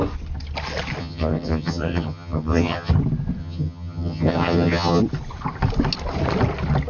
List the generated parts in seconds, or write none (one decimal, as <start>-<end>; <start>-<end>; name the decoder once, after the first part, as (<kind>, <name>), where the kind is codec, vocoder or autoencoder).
1.0-2.9 (vocoder, HiFi-GAN); 3.4-5.0